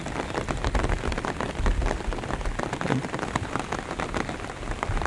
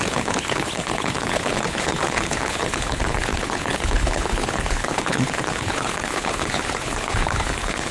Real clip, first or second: first